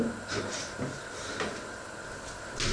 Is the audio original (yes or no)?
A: yes